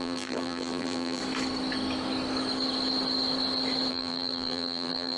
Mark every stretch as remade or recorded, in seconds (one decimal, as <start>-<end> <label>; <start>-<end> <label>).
0.0-1.2 remade; 1.2-3.9 recorded; 3.9-5.2 remade